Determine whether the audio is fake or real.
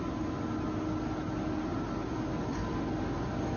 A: real